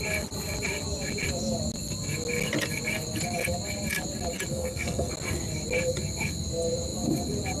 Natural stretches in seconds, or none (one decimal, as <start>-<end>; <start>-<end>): 0.0-4.5; 5.1-7.6